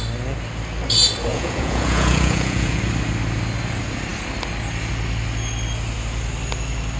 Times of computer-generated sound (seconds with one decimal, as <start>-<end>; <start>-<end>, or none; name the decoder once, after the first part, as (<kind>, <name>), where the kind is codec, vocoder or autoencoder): 1.3-2.8 (vocoder, Vocos)